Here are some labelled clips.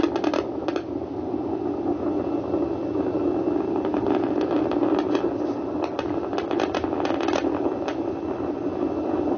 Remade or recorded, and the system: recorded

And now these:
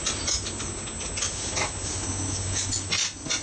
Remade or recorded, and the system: recorded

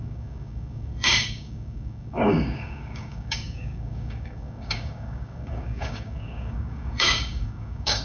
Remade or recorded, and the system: remade, codec, DAC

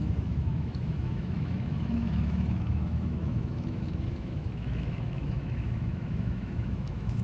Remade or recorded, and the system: remade, autoencoder, DAC-VAE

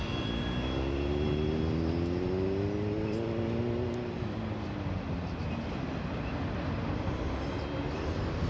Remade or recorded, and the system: recorded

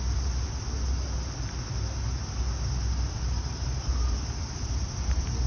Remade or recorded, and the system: recorded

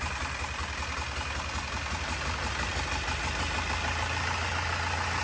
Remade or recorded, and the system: recorded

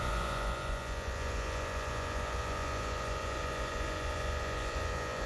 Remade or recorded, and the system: remade, vocoder, Vocos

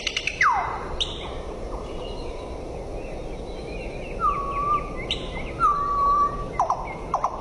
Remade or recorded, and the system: remade, vocoder, BigVGAN v2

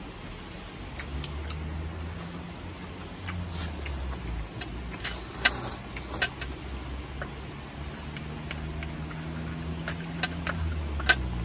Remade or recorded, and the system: recorded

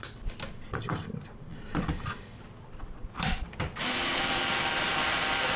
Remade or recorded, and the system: remade, vocoder, BigVGAN v2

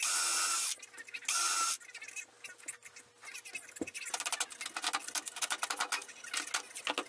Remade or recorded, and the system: recorded